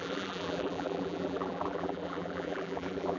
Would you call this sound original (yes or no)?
no